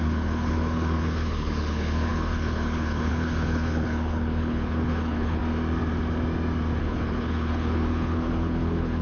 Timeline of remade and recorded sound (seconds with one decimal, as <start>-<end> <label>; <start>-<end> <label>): 0.0-5.4 remade; 5.4-6.8 recorded; 6.8-9.0 remade